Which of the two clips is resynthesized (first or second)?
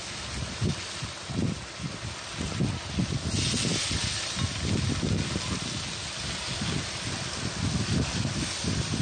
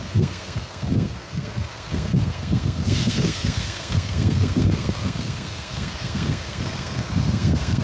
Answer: second